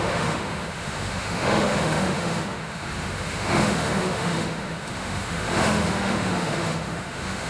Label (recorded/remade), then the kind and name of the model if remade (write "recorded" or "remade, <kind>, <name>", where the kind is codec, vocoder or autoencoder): remade, autoencoder, DAC-VAE